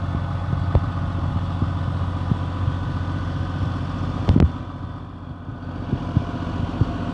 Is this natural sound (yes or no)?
yes